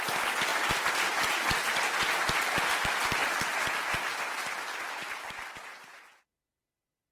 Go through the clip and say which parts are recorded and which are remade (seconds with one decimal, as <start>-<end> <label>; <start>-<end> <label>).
0.0-7.1 recorded